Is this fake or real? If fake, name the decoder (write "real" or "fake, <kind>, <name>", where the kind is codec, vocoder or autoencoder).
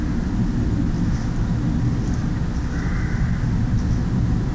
real